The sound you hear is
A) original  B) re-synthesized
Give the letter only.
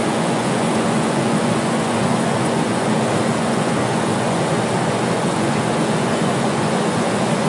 B